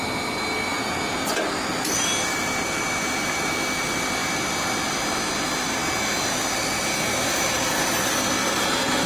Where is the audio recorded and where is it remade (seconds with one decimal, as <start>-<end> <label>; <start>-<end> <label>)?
0.0-0.7 recorded; 0.7-1.3 remade; 1.3-9.1 recorded